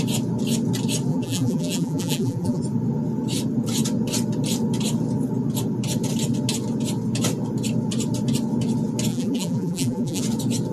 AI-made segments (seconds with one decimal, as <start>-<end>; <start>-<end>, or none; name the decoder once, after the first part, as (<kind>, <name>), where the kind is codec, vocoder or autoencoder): 1.1-2.6 (vocoder, BigVGAN v2); 9.1-10.2